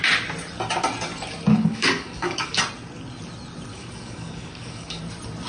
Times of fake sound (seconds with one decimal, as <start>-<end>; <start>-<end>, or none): 1.5-2.6; 3.7-5.0